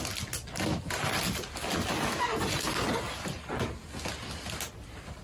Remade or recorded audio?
recorded